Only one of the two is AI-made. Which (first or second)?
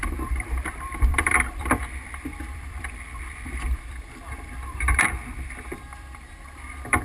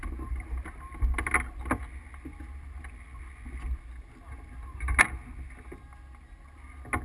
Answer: first